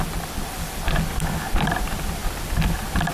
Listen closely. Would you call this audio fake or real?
fake